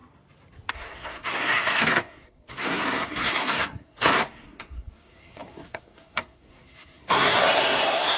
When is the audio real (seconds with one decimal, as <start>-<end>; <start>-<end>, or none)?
0.0-0.7